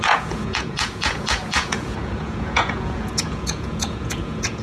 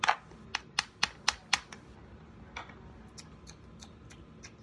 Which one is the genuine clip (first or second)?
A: second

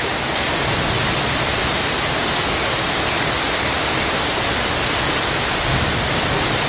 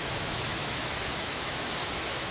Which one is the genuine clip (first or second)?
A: first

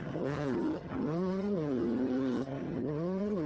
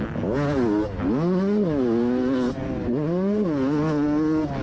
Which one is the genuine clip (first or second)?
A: second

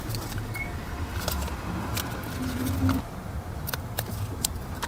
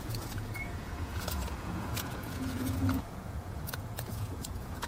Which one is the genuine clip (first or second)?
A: first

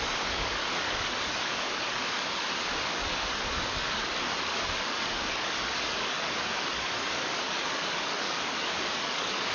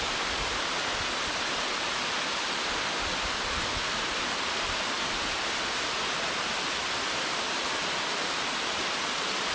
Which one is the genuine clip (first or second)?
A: second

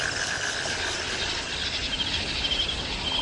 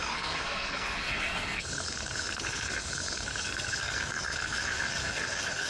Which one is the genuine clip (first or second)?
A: first